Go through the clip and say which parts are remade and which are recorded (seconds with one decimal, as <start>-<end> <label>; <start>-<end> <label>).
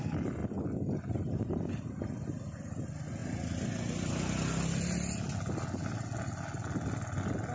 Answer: 0.0-7.5 recorded